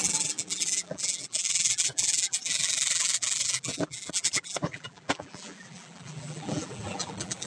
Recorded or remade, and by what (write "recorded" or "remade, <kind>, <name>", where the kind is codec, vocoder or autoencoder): remade, vocoder, BigVGAN v2